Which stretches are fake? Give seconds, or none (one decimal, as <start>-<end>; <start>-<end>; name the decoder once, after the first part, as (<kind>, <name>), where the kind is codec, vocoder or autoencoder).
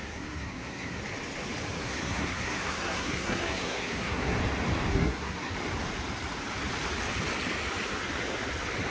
0.0-1.0 (codec, SNAC); 1.8-4.4; 4.9-5.5